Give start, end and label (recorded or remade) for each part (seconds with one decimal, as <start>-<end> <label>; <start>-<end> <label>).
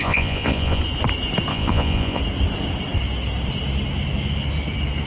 0.0-0.8 remade; 0.8-1.5 recorded; 1.5-2.2 remade; 2.2-5.1 recorded